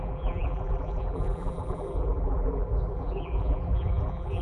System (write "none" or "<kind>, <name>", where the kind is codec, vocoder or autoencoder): vocoder, BigVGAN v2